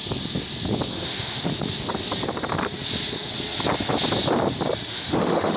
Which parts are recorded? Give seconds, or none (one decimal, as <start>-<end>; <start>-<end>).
0.0-0.9; 1.5-4.9

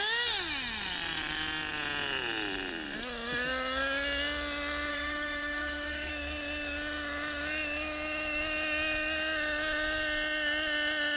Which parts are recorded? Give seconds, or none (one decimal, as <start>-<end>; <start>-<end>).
0.0-4.9; 6.1-11.2